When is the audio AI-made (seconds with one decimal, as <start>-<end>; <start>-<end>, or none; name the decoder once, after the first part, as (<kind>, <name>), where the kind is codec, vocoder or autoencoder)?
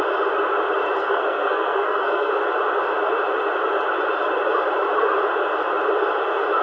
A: 1.0-2.3 (codec, SNAC)